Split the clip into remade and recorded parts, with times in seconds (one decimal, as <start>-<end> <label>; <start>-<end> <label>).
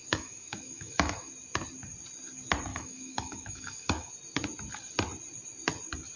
0.0-1.3 remade; 1.3-2.7 recorded; 2.7-4.1 remade; 4.1-6.2 recorded